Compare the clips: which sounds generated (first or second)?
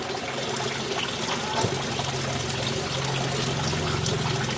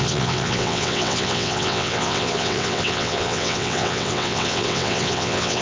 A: second